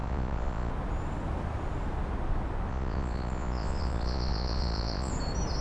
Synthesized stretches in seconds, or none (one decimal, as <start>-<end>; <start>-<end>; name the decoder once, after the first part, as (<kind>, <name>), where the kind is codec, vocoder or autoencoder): 0.0-0.7 (vocoder, Vocos); 2.7-5.1